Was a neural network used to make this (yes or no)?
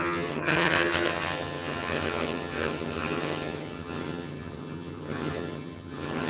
yes